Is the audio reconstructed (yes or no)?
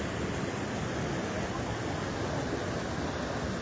no